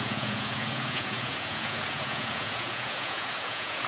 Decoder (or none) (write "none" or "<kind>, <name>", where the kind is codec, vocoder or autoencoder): vocoder, Vocos